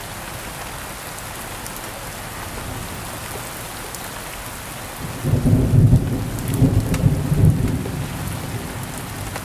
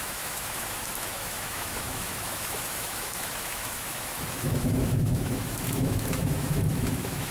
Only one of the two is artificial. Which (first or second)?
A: second